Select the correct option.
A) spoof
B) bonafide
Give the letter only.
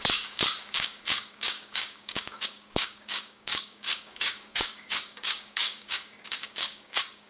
A